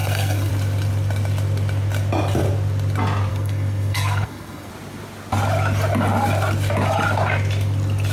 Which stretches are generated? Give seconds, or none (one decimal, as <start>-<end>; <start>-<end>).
0.0-0.5; 3.3-4.7